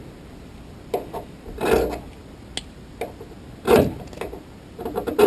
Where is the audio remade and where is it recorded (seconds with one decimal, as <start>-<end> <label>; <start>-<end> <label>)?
0.0-5.3 recorded